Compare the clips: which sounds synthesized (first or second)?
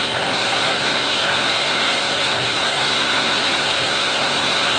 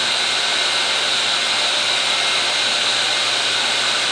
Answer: first